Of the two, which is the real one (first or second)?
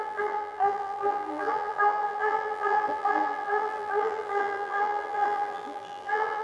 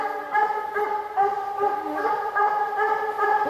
second